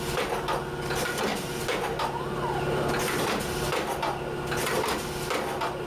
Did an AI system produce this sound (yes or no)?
no